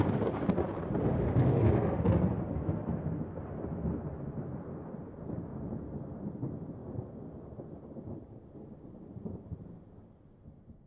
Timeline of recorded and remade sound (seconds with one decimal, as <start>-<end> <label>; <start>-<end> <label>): 0.0-10.9 recorded